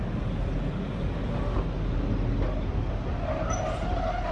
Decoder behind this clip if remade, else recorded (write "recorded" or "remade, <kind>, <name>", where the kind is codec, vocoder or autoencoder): recorded